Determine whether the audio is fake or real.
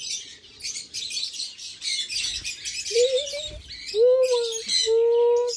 real